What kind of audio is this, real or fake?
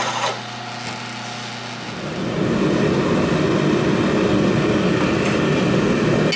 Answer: real